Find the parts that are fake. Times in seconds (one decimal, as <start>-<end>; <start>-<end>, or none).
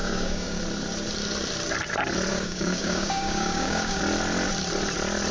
0.0-0.6; 2.3-4.0